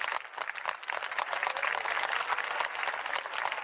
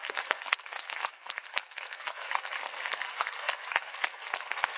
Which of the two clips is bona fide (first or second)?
first